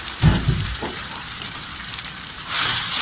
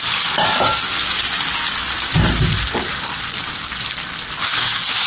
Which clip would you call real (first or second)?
second